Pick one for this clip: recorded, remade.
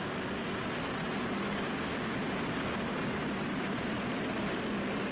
recorded